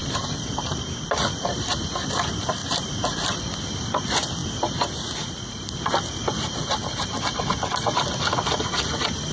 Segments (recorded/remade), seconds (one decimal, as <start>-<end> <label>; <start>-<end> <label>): 0.0-1.0 remade; 1.0-2.6 recorded; 2.6-3.4 remade; 3.4-6.6 recorded; 6.6-8.0 remade; 8.0-9.3 recorded